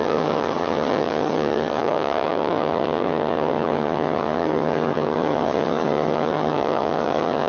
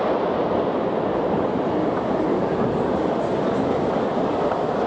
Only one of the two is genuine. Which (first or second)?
second